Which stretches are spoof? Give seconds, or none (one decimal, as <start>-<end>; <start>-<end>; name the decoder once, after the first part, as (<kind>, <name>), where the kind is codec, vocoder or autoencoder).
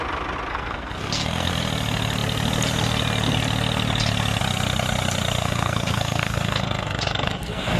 0.5-1.5 (codec, SNAC); 5.4-7.8